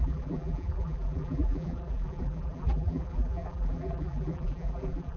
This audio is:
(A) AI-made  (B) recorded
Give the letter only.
A